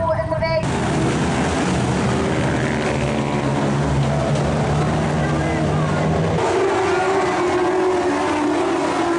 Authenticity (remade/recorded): recorded